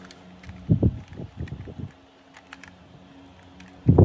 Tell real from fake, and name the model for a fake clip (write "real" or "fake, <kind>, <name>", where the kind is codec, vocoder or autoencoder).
real